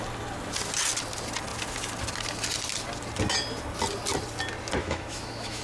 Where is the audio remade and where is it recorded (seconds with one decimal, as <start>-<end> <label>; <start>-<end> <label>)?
0.0-4.8 recorded; 4.8-5.6 remade